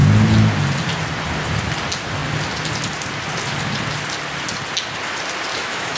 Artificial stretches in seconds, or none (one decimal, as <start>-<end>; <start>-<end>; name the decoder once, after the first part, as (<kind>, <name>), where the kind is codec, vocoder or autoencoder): 5.5-6.0 (autoencoder, DAC-VAE)